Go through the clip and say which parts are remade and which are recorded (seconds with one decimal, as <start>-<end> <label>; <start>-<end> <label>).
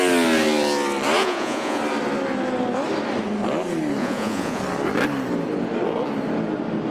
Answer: 0.0-1.2 recorded; 1.2-1.8 remade; 1.8-4.0 recorded; 4.0-4.6 remade; 4.6-6.9 recorded